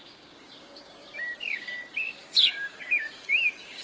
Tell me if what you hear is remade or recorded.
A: remade